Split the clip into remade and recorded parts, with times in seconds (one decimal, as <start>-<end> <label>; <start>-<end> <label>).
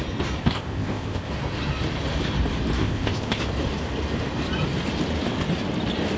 0.0-0.4 recorded; 0.4-1.3 remade; 1.3-2.8 recorded; 2.8-3.4 remade; 3.4-6.2 recorded